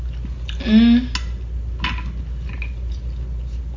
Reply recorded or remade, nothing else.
recorded